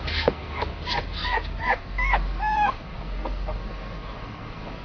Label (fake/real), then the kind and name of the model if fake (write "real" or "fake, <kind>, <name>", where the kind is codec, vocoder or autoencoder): fake, codec, SNAC